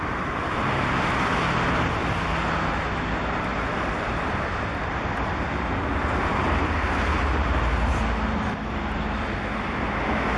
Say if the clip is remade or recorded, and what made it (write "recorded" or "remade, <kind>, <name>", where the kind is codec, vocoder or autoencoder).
recorded